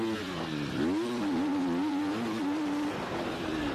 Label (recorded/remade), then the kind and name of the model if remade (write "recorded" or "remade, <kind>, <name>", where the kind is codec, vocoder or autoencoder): remade, vocoder, BigVGAN v2